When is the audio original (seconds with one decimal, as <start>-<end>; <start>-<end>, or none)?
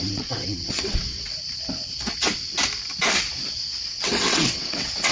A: 1.3-3.8